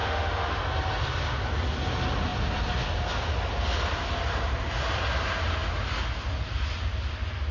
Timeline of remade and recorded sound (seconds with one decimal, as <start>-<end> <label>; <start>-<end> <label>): 0.0-0.6 remade; 0.6-7.5 recorded